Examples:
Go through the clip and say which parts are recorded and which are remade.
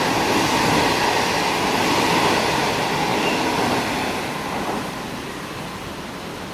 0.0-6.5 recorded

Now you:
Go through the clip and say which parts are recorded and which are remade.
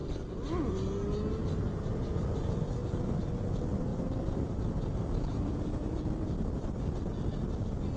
0.0-3.9 recorded; 3.9-6.0 remade; 6.0-8.0 recorded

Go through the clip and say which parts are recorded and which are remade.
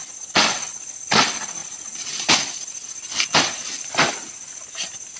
0.0-5.2 recorded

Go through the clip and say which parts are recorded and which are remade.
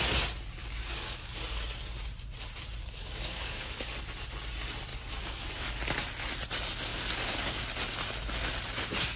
0.0-0.6 recorded; 0.6-1.4 remade; 1.4-2.8 recorded; 2.8-3.9 remade; 3.9-4.9 recorded; 4.9-5.7 remade; 5.7-6.9 recorded; 6.9-7.6 remade; 7.6-9.2 recorded